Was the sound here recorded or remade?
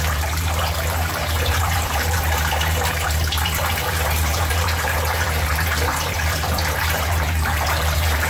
remade